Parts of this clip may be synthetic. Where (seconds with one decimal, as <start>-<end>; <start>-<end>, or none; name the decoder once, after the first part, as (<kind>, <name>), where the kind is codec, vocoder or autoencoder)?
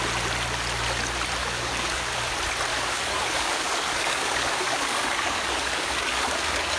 1.4-2.2 (codec, DAC); 2.7-6.8